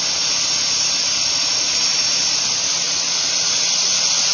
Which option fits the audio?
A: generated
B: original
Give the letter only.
B